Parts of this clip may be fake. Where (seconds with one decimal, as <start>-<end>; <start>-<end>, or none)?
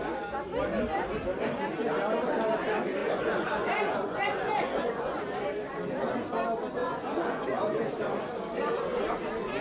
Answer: 3.0-5.2; 6.8-8.0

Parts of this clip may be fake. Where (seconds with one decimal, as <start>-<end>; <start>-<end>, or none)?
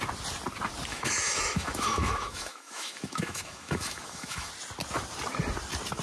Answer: 0.9-4.5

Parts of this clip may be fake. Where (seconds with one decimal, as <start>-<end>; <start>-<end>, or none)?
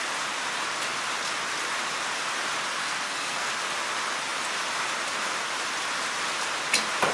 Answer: 2.8-3.5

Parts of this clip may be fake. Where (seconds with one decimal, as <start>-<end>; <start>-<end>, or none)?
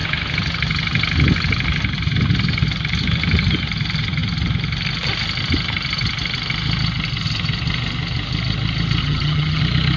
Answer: 9.0-9.6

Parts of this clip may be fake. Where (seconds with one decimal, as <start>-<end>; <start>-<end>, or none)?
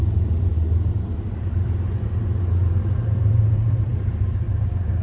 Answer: 0.0-5.0